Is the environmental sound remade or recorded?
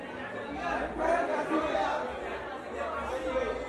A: recorded